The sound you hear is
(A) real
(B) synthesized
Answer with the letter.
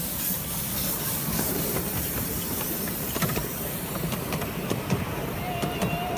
B